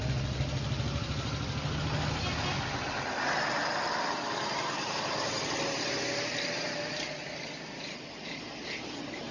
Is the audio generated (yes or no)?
no